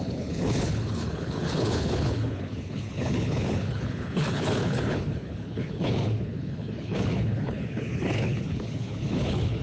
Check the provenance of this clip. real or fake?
fake